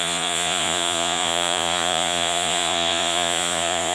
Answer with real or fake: fake